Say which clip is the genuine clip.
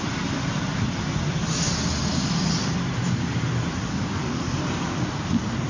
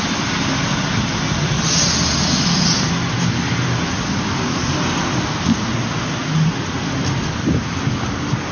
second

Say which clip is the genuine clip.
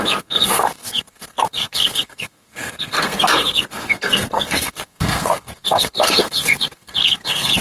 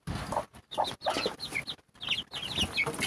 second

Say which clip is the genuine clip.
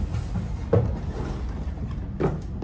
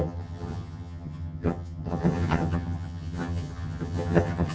first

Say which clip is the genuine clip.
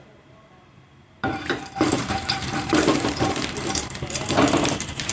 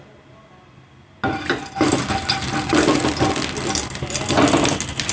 second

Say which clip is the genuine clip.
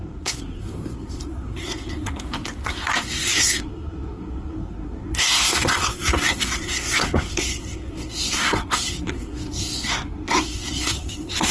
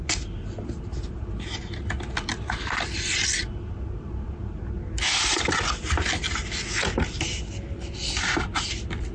second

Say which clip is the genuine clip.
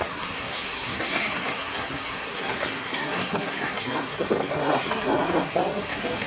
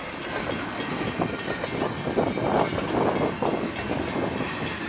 second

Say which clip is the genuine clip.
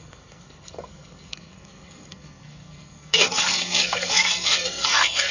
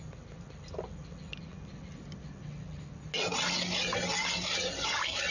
second